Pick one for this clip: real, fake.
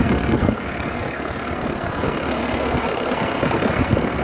fake